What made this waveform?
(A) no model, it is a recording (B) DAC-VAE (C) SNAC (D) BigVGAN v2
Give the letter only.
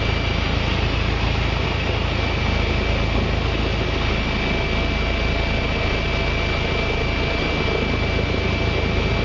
A